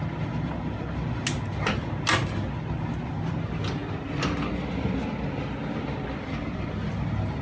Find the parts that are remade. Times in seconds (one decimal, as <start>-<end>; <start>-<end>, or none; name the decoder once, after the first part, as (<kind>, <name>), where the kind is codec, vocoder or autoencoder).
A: none